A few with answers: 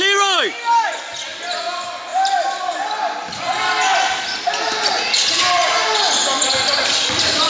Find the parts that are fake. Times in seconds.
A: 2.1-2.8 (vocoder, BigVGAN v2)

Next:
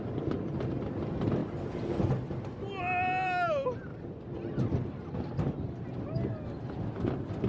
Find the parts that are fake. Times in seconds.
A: none

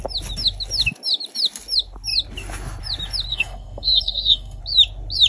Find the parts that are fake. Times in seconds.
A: 3.3-4.6 (codec, SNAC)

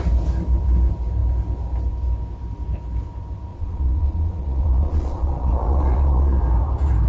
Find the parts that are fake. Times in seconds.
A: 3.5-6.4 (vocoder, Vocos)

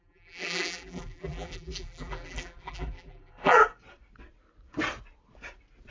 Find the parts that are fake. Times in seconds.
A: 0.0-3.6 (vocoder, BigVGAN v2)

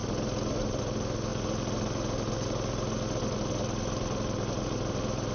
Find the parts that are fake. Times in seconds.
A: none